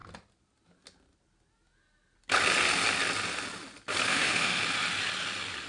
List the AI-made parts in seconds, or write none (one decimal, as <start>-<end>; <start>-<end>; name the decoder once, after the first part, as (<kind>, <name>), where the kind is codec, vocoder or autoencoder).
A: 4.1-4.6 (autoencoder, DAC-VAE)